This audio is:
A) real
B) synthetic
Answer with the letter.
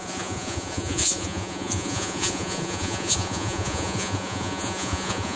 B